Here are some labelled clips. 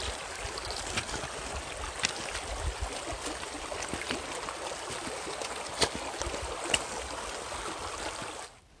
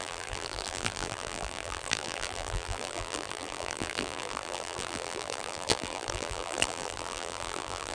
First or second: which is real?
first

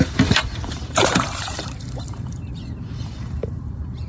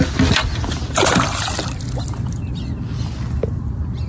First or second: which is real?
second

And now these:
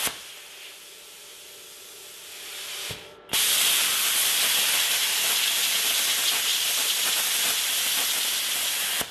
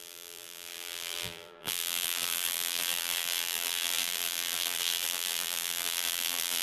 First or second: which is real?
first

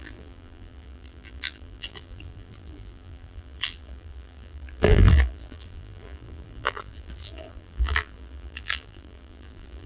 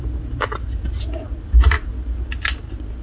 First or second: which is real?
second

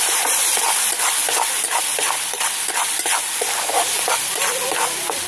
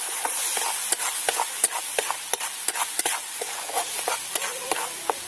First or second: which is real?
second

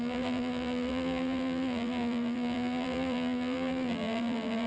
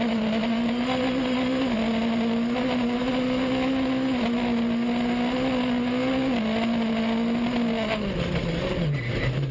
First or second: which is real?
second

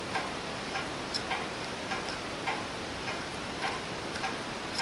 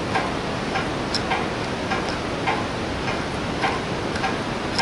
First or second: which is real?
second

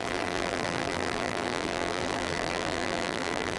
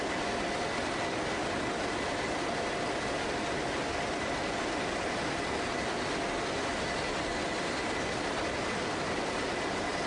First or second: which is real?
second